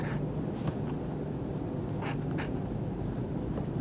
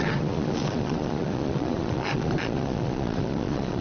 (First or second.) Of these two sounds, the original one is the first